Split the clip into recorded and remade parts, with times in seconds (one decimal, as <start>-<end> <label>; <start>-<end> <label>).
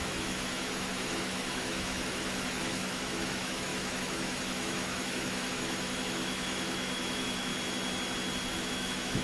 0.0-7.5 remade; 7.5-8.5 recorded; 8.5-9.2 remade